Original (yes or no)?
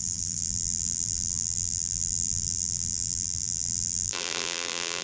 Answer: no